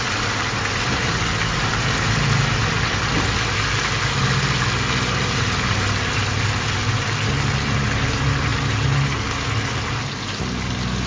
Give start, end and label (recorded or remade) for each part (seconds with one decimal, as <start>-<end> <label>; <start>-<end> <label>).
0.0-11.1 recorded